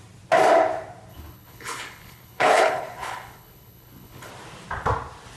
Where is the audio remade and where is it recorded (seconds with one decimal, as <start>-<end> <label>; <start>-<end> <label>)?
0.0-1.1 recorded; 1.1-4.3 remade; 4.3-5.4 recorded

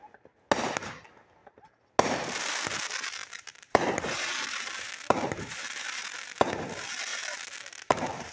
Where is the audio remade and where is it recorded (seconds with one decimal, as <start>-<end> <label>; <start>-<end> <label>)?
0.0-3.2 recorded; 3.2-6.4 remade; 6.4-7.1 recorded; 7.1-8.3 remade

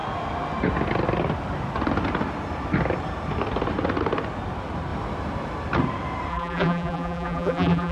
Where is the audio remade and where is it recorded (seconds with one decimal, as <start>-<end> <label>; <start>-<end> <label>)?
0.0-6.3 recorded; 6.3-7.9 remade

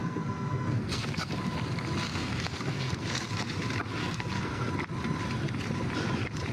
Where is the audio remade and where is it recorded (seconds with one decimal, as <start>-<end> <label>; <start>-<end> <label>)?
0.0-1.3 remade; 1.3-2.1 recorded; 2.1-3.3 remade; 3.3-4.0 recorded; 4.0-4.7 remade; 4.7-6.5 recorded